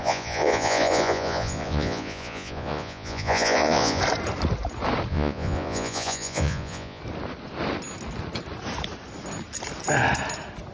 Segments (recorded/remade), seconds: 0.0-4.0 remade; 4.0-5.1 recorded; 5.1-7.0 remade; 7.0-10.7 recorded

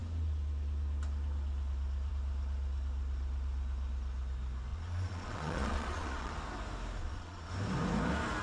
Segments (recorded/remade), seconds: 0.0-4.7 recorded; 4.7-6.3 remade; 6.3-7.0 recorded; 7.0-7.5 remade; 7.5-8.4 recorded

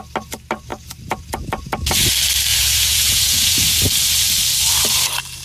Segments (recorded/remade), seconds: 0.0-2.5 recorded; 2.5-3.8 remade; 3.8-5.4 recorded

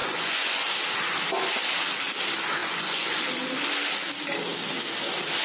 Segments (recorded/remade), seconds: 0.0-0.7 remade; 0.7-2.6 recorded; 2.6-3.2 remade; 3.2-5.4 recorded

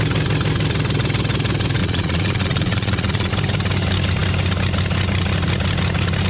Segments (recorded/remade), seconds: 0.0-1.8 recorded; 1.8-3.3 remade; 3.3-6.3 recorded

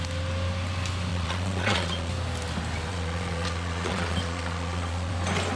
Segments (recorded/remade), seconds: 0.0-1.1 recorded; 1.1-2.1 remade; 2.1-2.9 recorded; 2.9-5.1 remade; 5.1-5.6 recorded

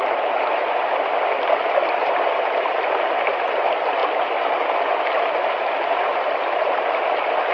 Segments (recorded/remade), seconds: 0.0-7.5 recorded